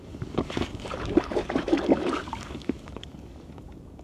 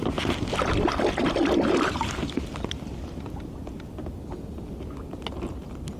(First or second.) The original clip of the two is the second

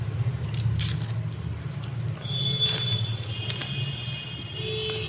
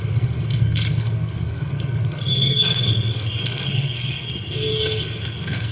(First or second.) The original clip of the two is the first